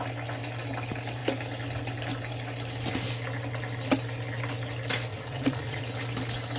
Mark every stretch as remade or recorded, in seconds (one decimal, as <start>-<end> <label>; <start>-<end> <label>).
0.0-5.1 recorded; 5.1-5.8 remade; 5.8-6.6 recorded